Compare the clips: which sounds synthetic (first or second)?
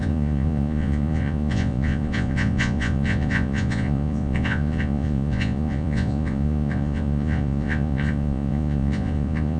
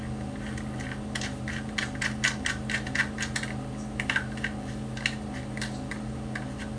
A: first